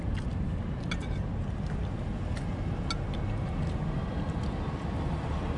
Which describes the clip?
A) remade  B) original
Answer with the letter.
B